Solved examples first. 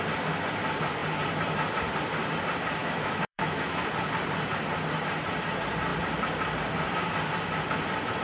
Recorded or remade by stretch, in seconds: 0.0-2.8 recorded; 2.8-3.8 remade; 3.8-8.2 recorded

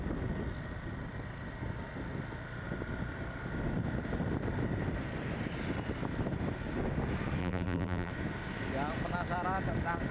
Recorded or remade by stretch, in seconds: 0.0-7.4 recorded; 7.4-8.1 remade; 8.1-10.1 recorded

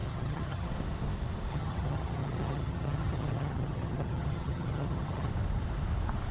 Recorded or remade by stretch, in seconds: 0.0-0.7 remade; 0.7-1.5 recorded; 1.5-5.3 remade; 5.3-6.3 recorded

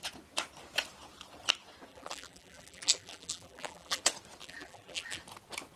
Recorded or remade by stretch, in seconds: 0.0-1.9 recorded; 1.9-4.0 remade; 4.0-4.4 recorded; 4.4-5.2 remade; 5.2-5.8 recorded

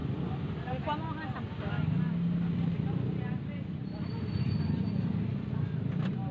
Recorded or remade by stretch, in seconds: 0.0-6.3 recorded

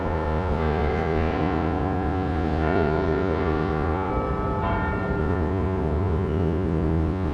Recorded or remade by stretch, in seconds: 0.0-4.1 remade; 4.1-5.2 recorded; 5.2-7.3 remade